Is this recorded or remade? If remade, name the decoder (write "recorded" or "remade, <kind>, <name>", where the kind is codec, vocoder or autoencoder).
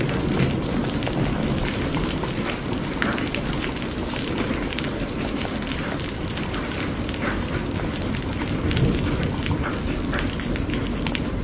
remade, vocoder, BigVGAN v2